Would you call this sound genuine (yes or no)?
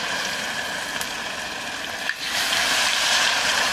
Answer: no